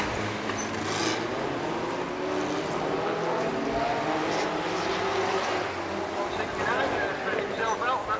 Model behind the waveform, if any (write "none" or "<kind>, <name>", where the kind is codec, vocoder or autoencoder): none